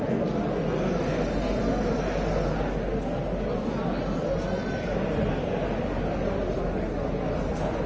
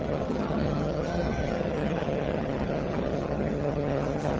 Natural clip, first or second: first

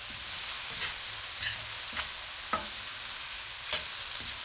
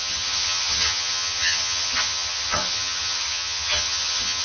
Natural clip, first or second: first